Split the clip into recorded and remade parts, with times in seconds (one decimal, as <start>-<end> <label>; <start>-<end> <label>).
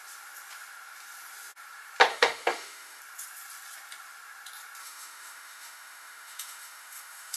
0.0-2.1 recorded; 2.1-3.0 remade; 3.0-4.8 recorded; 4.8-7.4 remade